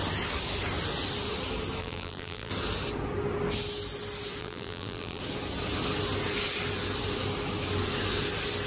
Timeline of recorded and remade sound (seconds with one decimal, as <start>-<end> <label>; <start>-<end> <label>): 0.0-1.8 recorded; 1.8-2.5 remade; 2.5-4.4 recorded; 4.4-5.2 remade; 5.2-8.7 recorded